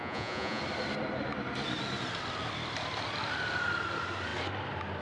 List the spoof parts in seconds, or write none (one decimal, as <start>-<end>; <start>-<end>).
0.0-0.6